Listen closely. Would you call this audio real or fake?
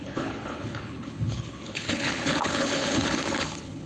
fake